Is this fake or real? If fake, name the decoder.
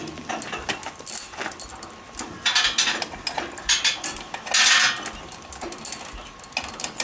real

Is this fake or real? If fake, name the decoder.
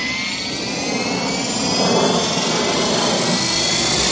real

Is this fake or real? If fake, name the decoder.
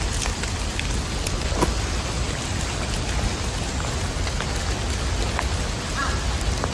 real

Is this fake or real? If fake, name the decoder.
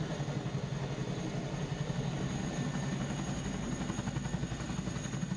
real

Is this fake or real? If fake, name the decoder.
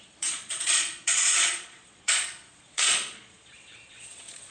fake, vocoder, Vocos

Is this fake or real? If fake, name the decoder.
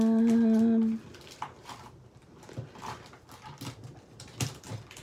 real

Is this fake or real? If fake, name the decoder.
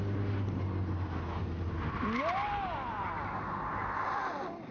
real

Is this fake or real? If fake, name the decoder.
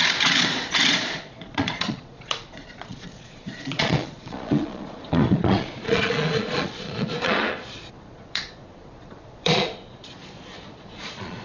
fake, vocoder, Vocos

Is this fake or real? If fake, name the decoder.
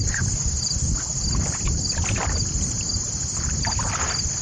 real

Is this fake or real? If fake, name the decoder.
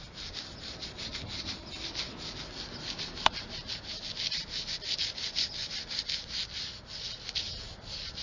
real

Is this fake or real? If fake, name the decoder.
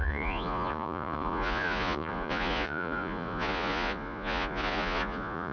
fake, vocoder, Vocos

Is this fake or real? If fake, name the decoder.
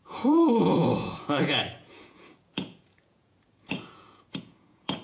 fake, vocoder, Vocos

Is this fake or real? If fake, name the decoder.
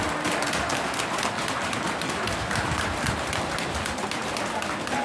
real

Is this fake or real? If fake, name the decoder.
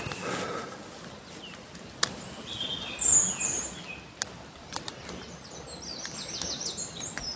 real